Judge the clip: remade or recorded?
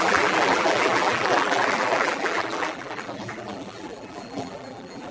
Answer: remade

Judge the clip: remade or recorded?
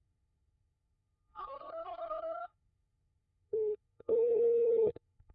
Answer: remade